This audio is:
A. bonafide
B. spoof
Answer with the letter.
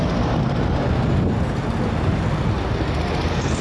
A